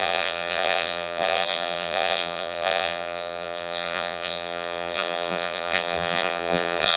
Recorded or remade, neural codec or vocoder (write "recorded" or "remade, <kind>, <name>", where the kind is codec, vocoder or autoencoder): remade, vocoder, BigVGAN v2